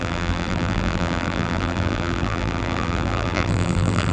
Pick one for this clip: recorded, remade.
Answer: remade